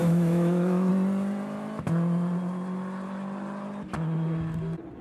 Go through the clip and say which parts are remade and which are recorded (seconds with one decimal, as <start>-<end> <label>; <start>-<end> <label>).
0.0-0.9 remade; 0.9-5.0 recorded